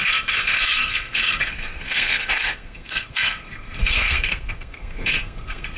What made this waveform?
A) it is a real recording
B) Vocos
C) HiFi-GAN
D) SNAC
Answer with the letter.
D